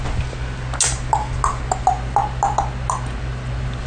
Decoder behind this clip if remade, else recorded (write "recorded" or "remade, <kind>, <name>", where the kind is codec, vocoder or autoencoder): recorded